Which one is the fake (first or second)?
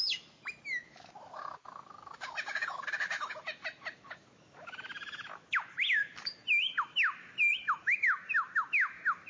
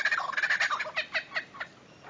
first